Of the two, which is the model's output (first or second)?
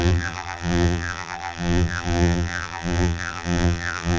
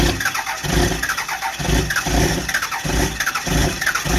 first